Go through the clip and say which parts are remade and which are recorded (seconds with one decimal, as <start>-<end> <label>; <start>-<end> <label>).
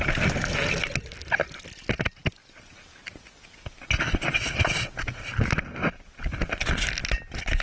0.0-7.6 recorded